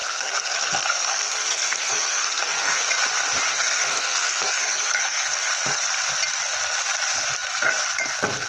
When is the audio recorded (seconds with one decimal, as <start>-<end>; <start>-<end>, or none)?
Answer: 2.8-3.5; 5.5-8.5